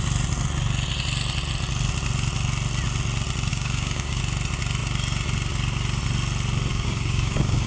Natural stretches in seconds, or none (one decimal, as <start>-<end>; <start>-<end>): 0.0-3.5; 4.2-6.7